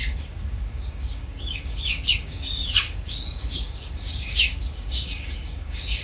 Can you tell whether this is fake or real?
fake